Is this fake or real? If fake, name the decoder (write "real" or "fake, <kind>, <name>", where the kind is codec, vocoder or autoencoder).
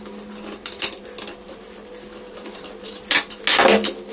real